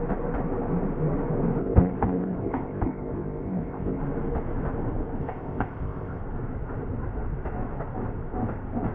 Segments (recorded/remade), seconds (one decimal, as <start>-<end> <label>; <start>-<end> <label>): 0.0-1.6 recorded; 1.6-4.0 remade; 4.0-5.2 recorded; 5.2-6.2 remade; 6.2-8.9 recorded